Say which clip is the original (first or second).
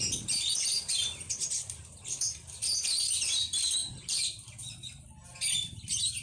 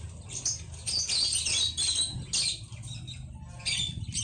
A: second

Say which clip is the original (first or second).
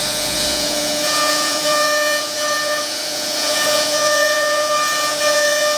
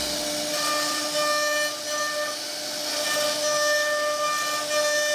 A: second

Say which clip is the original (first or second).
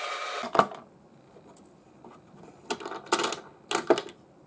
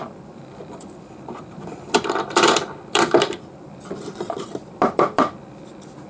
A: first